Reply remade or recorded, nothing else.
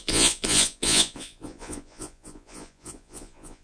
remade